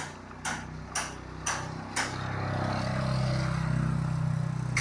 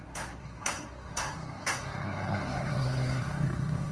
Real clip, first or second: first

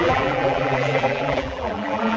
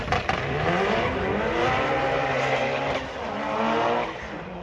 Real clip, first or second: second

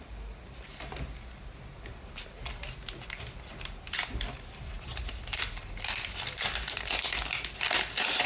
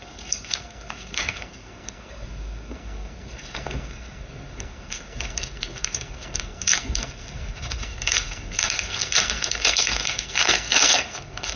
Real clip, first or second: first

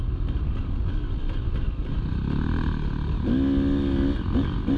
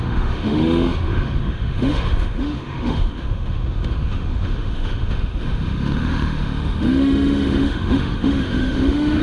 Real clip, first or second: first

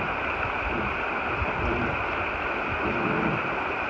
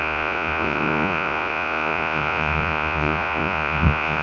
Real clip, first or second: first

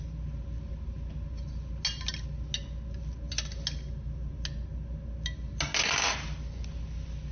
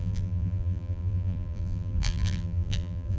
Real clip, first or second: first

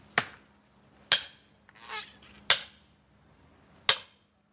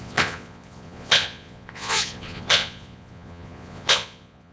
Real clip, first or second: first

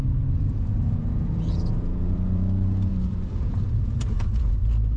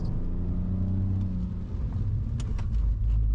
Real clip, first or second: second